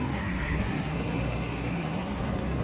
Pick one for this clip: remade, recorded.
remade